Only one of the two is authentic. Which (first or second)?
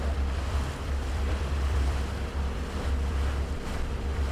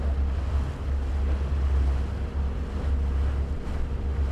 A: second